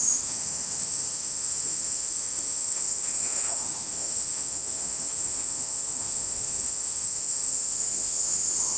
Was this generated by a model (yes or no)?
yes